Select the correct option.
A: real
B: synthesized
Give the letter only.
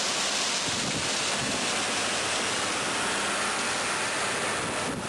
A